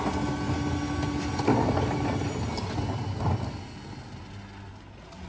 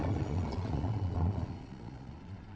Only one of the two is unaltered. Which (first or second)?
first